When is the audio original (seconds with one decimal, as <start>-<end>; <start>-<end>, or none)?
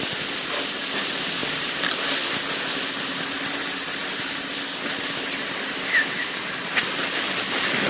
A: 0.0-7.9